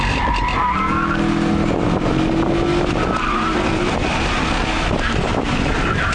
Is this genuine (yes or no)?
yes